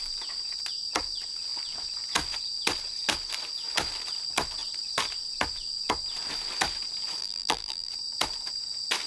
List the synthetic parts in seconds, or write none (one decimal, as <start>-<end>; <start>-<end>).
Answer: 7.2-7.9